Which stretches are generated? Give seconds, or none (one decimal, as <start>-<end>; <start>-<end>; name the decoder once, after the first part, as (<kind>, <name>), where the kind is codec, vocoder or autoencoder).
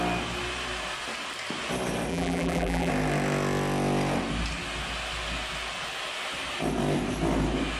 2.1-2.9 (vocoder, BigVGAN v2)